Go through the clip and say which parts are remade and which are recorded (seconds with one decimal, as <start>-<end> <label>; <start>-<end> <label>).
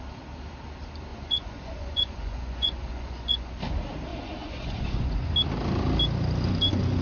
0.0-1.1 recorded; 1.1-3.5 remade; 3.5-4.1 recorded; 4.1-5.3 remade; 5.3-7.0 recorded